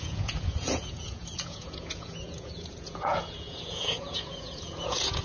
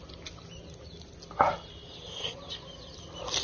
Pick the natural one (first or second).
second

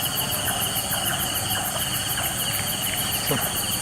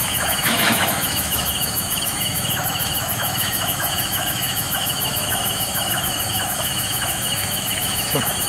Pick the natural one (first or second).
first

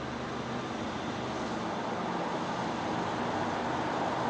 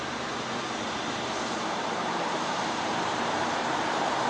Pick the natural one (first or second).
first